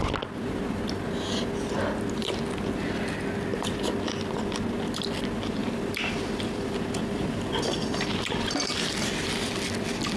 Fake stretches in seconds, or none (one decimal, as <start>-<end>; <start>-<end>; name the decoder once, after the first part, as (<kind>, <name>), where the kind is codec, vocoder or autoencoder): 3.5-4.0 (vocoder, BigVGAN v2); 5.6-9.6